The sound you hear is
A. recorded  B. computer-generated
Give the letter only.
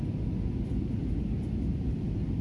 A